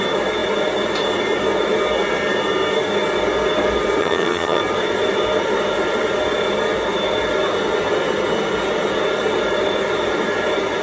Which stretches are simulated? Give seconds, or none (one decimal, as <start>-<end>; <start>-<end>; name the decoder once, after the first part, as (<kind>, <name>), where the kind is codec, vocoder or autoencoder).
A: 4.0-4.6 (vocoder, HiFi-GAN)